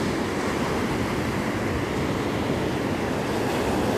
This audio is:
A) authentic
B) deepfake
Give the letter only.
A